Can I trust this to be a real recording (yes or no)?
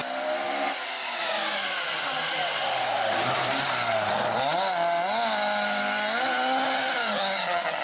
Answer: yes